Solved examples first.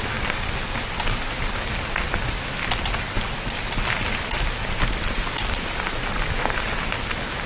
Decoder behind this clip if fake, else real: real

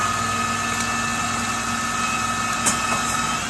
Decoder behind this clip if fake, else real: real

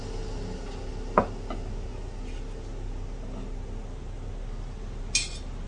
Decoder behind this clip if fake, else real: real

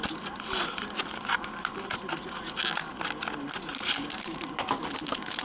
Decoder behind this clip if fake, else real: real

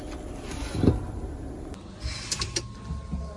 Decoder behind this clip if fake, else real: real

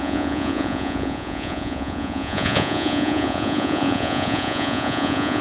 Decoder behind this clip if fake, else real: fake, vocoder, Vocos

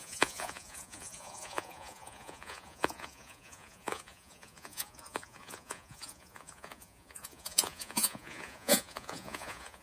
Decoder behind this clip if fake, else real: fake, vocoder, Vocos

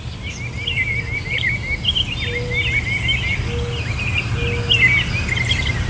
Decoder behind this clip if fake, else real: real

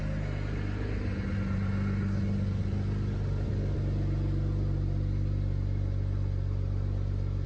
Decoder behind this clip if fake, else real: real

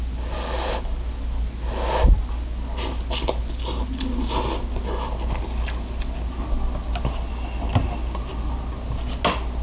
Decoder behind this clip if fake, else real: real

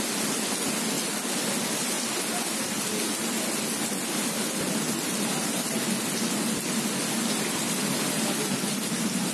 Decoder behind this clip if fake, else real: real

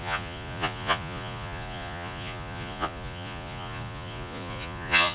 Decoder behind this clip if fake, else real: fake, vocoder, Vocos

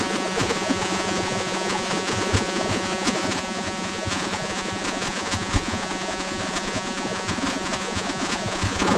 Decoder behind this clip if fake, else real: fake, vocoder, Vocos